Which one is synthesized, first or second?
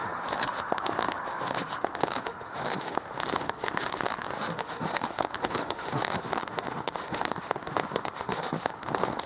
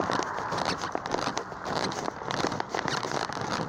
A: first